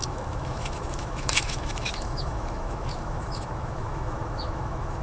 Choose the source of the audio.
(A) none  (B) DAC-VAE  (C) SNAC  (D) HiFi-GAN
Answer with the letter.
B